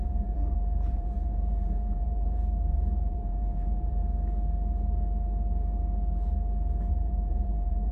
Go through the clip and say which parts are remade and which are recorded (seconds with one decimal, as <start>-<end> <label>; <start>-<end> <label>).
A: 0.0-4.0 remade; 4.0-6.9 recorded; 6.9-7.9 remade